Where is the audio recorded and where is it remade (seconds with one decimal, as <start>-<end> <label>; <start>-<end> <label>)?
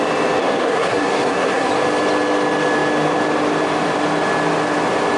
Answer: 0.0-0.4 recorded; 0.4-1.7 remade; 1.7-5.2 recorded